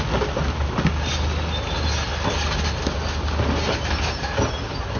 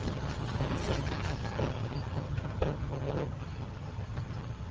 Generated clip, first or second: second